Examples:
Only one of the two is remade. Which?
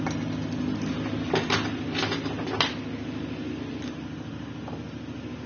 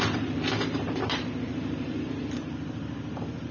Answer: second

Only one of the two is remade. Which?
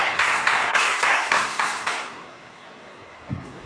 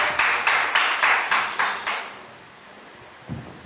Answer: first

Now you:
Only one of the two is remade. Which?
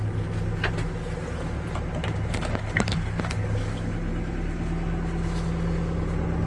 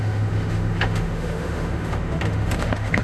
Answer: second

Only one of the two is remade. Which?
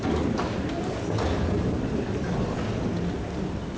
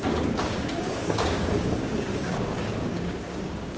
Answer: second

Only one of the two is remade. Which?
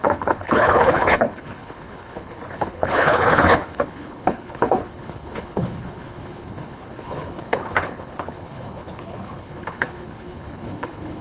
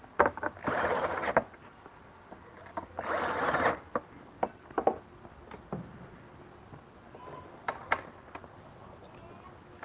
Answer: first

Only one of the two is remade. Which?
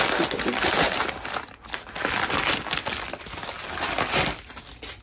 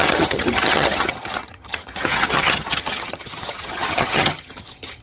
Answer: second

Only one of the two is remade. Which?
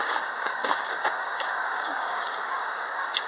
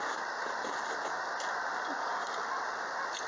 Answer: first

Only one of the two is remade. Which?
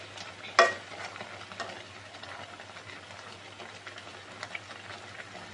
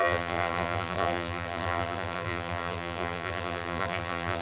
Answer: second